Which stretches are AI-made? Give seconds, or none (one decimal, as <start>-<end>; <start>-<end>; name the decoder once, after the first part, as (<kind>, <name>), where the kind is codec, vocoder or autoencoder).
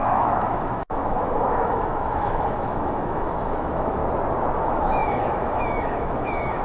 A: 0.0-4.0 (autoencoder, DAC-VAE); 4.6-6.6